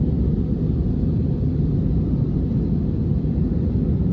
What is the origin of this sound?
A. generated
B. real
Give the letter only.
B